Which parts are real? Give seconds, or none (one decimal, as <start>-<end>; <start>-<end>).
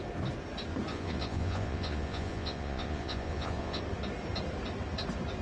0.0-0.9; 3.8-5.4